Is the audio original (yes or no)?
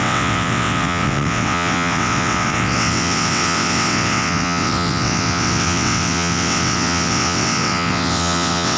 no